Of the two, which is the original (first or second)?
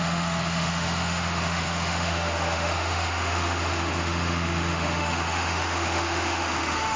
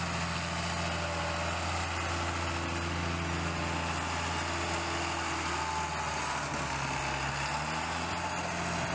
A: second